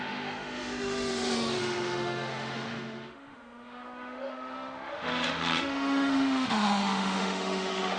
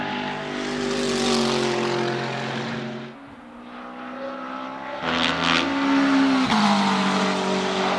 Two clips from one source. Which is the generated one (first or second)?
first